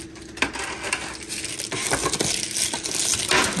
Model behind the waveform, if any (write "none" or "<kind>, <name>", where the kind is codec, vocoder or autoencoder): none